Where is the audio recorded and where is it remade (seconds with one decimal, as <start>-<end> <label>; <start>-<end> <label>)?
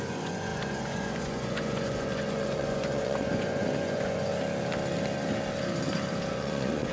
0.0-4.3 remade; 4.3-6.3 recorded; 6.3-6.9 remade